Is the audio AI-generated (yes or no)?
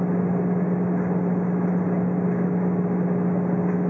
no